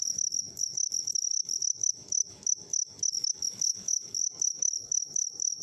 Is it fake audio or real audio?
fake